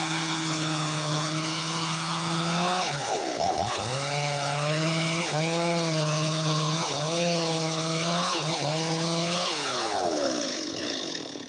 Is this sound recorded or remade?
remade